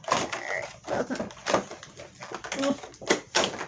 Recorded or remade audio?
recorded